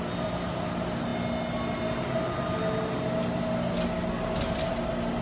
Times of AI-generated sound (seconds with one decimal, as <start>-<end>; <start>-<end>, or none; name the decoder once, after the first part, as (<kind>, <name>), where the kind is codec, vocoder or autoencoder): none